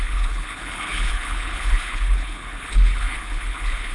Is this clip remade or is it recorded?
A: remade